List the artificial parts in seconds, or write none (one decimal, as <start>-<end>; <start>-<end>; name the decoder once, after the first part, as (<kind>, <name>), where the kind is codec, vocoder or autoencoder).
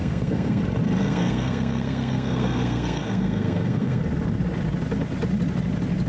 0.0-0.6 (codec, SNAC); 1.0-4.0